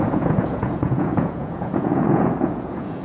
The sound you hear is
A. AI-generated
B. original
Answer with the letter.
A